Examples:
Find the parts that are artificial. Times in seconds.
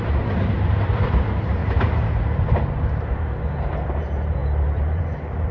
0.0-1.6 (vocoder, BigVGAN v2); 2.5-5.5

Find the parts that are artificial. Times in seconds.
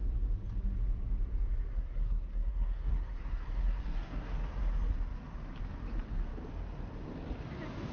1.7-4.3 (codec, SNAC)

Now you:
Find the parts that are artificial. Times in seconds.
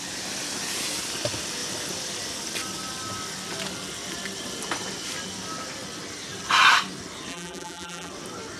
7.3-8.1 (vocoder, BigVGAN v2)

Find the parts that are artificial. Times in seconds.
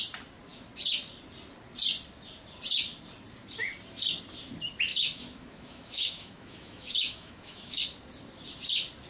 4.9-7.8 (autoencoder, DAC-VAE)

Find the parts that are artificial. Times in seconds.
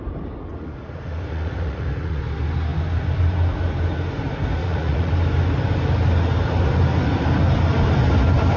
0.5-2.2 (vocoder, Vocos); 4.6-5.1